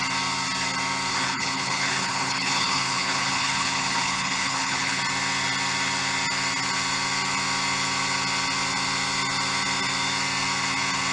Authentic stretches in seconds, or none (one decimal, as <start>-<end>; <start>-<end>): 0.0-1.1; 5.0-11.1